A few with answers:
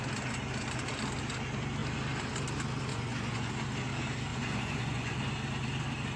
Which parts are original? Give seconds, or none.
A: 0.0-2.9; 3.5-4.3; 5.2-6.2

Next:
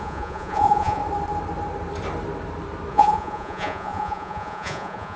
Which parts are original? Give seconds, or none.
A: 1.0-2.9

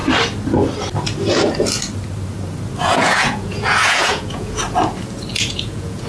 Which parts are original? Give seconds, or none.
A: 0.0-2.8; 4.6-5.3